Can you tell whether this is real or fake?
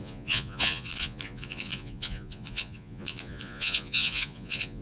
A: fake